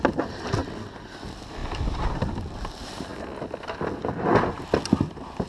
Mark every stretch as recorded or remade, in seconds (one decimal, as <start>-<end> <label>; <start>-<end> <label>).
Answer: 0.0-1.6 recorded; 1.6-2.3 remade; 2.3-5.5 recorded

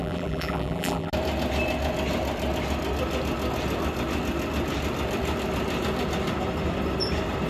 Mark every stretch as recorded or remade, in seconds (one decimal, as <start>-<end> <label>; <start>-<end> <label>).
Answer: 0.0-1.1 remade; 1.1-7.5 recorded

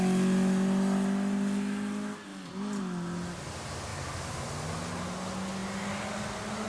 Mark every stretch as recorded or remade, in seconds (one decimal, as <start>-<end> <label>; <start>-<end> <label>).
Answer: 0.0-2.3 recorded; 2.3-2.8 remade; 2.8-3.9 recorded; 3.9-4.4 remade; 4.4-6.7 recorded

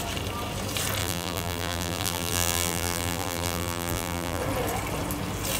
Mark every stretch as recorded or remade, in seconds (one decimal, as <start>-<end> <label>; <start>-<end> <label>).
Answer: 0.0-1.0 recorded; 1.0-4.4 remade; 4.4-5.6 recorded

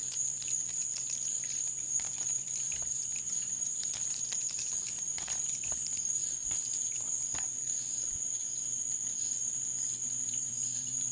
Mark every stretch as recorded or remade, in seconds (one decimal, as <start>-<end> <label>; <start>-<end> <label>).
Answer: 0.0-6.2 remade; 6.2-10.2 recorded; 10.2-11.1 remade

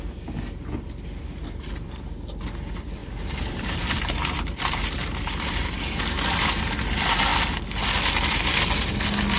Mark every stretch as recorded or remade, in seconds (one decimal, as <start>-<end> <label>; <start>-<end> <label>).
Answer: 0.0-3.0 recorded; 3.0-6.6 remade; 6.6-9.4 recorded